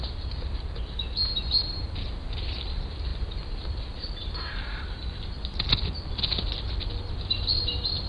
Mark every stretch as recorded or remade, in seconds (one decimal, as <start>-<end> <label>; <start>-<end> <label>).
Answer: 0.0-8.1 recorded